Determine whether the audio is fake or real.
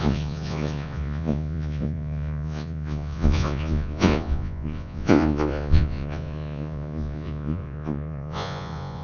fake